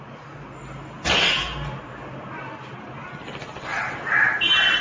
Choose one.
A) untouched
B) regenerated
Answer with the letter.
A